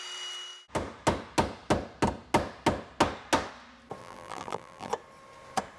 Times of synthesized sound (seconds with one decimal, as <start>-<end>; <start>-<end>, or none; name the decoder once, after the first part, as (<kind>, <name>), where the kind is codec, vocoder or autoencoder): 4.0-4.9 (vocoder, BigVGAN v2)